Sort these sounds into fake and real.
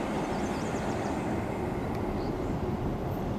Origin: real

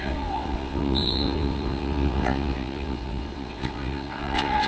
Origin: fake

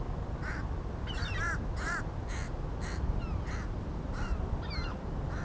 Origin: real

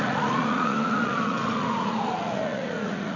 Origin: fake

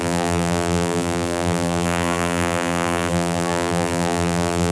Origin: fake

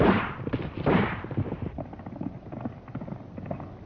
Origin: real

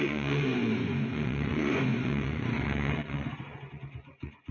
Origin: fake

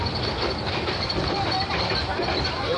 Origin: real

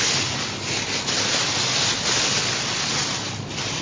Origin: real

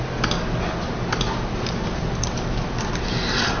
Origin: real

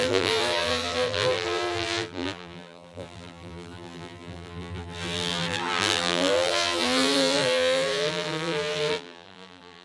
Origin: fake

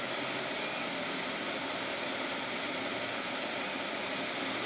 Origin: real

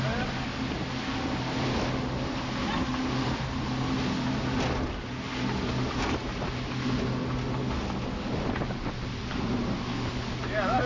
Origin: real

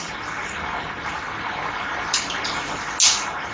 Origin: real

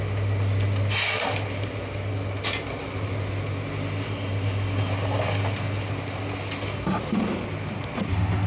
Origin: real